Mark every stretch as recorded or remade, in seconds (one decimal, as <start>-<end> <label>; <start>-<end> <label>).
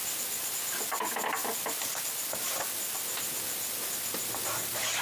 0.0-5.0 recorded